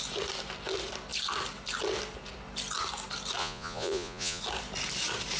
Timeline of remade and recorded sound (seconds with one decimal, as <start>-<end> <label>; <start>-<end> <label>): 0.0-3.4 recorded; 3.4-4.4 remade; 4.4-5.4 recorded